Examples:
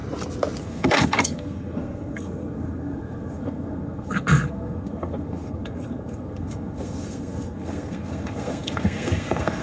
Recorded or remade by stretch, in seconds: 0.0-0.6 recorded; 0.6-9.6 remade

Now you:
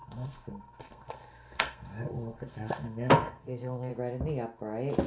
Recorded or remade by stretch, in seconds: 0.0-3.9 remade; 3.9-5.1 recorded

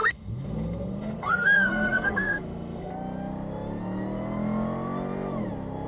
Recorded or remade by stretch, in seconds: 0.0-2.9 remade; 2.9-5.9 recorded

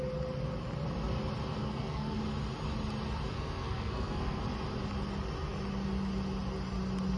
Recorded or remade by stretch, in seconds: 0.0-1.6 recorded; 1.6-2.2 remade; 2.2-3.3 recorded; 3.3-4.4 remade; 4.4-7.2 recorded

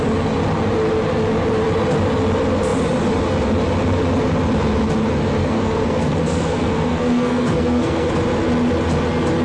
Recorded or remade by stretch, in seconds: 0.0-5.4 recorded; 5.4-8.1 remade; 8.1-9.4 recorded

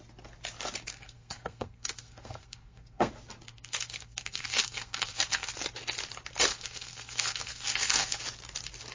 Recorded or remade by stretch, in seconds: 0.0-0.9 recorded; 0.9-3.1 remade; 3.1-3.5 recorded; 3.5-5.5 remade; 5.5-6.5 recorded; 6.5-8.2 remade; 8.2-8.9 recorded

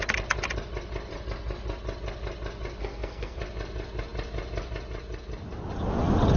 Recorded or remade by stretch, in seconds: 0.0-2.8 recorded; 2.8-3.4 remade; 3.4-6.4 recorded